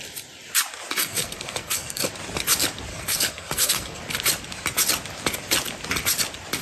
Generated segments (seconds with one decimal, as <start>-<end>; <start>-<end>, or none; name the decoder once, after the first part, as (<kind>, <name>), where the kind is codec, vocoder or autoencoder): 1.0-2.1 (codec, SNAC); 2.9-4.0